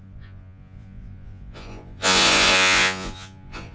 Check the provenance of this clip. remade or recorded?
remade